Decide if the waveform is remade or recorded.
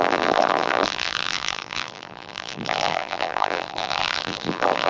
remade